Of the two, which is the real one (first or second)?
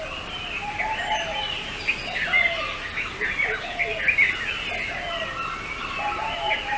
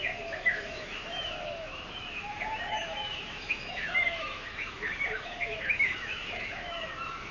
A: first